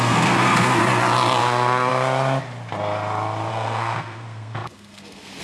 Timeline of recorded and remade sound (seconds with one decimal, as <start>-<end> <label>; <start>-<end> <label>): 0.0-0.8 remade; 0.8-1.4 recorded; 1.4-1.9 remade; 1.9-3.5 recorded; 3.5-5.4 remade